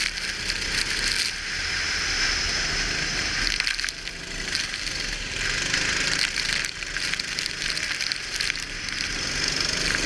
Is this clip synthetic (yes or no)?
no